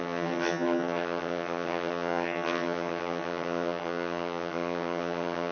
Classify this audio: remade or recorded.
remade